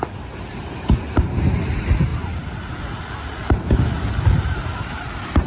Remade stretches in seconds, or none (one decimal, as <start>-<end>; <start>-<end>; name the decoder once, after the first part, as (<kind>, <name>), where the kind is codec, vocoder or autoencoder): none